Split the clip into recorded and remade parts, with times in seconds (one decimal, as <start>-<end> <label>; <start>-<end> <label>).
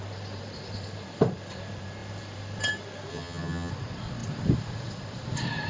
0.0-3.1 recorded; 3.1-3.7 remade; 3.7-5.7 recorded